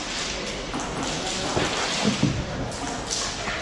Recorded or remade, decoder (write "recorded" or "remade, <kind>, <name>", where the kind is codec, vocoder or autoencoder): recorded